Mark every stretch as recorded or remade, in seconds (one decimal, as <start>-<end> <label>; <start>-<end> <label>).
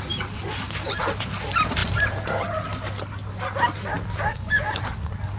0.0-4.3 recorded; 4.3-4.8 remade; 4.8-5.4 recorded